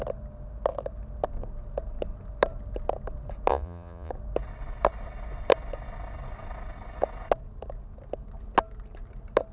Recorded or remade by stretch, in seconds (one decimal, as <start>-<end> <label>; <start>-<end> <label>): 0.0-3.5 recorded; 3.5-4.1 remade; 4.1-9.5 recorded